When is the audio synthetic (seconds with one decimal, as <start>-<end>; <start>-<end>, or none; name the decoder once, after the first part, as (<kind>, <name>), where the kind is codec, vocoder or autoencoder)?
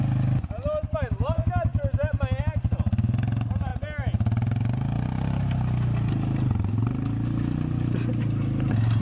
none